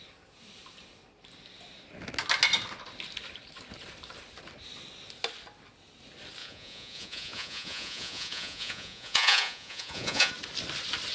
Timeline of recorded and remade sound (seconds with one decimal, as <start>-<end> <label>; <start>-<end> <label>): 0.0-6.4 recorded; 6.4-10.3 remade; 10.3-11.1 recorded